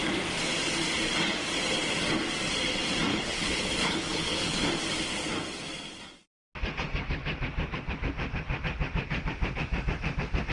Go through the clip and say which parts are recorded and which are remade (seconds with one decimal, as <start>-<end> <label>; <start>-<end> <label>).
0.0-3.1 recorded; 3.1-4.7 remade; 4.7-10.5 recorded